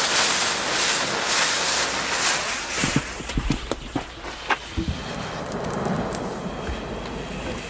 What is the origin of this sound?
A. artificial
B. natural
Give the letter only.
B